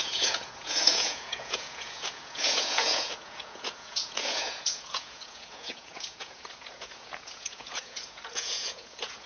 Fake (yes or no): yes